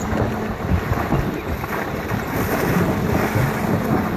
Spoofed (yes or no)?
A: no